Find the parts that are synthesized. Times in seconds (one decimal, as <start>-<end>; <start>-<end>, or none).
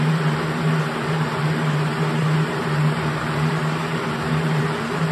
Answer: 0.0-1.9; 2.6-5.1